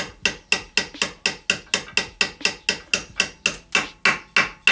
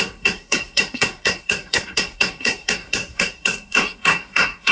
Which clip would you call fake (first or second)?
second